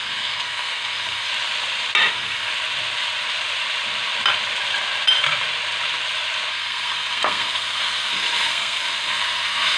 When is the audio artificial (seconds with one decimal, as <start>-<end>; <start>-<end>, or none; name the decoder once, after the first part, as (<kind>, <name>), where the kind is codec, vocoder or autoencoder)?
0.0-1.3 (codec, SNAC); 2.1-2.5; 6.5-9.8